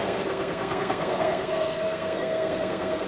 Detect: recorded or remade remade